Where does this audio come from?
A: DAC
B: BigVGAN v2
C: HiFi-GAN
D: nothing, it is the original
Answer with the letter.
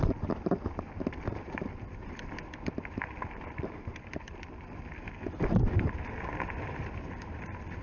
B